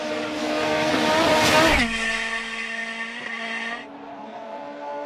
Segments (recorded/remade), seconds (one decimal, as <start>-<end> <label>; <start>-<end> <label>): 0.0-0.4 recorded; 0.4-0.9 remade; 0.9-4.1 recorded; 4.1-5.1 remade